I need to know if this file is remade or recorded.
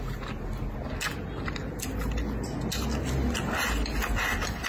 recorded